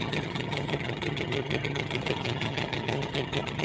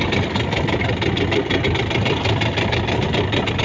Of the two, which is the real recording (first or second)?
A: second